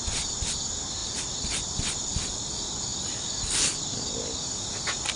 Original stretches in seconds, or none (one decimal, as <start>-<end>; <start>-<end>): 0.0-5.2